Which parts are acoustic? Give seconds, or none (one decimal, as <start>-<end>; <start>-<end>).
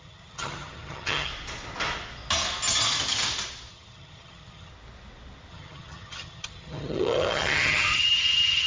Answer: 1.3-3.7; 4.7-5.5